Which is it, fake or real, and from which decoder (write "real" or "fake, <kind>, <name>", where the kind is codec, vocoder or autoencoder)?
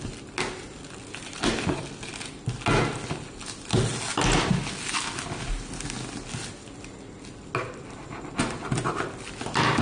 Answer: real